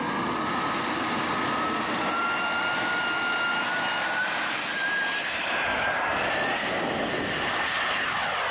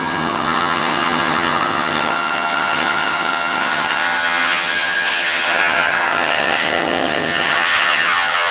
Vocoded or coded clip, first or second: second